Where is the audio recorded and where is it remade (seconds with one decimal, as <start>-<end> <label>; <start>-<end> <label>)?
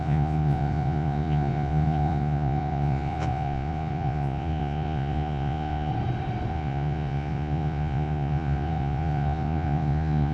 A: 0.0-5.9 remade; 5.9-6.5 recorded; 6.5-10.3 remade